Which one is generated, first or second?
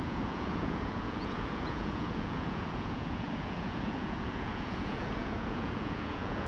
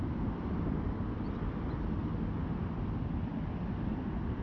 first